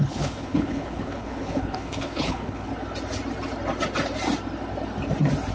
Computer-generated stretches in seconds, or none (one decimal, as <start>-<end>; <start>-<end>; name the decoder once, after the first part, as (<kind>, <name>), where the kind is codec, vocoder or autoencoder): 0.0-2.7 (codec, HILCodec)